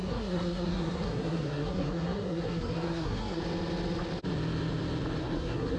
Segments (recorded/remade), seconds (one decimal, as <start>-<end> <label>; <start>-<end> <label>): 0.0-3.4 remade; 3.4-5.2 recorded; 5.2-5.8 remade